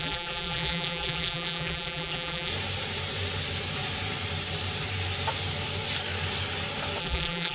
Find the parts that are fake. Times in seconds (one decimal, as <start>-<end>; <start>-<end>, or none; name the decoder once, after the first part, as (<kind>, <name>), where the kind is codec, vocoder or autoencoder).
0.0-2.5 (vocoder, BigVGAN v2); 7.0-7.5